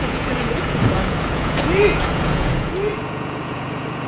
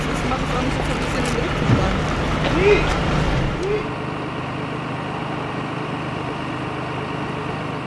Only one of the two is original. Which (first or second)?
second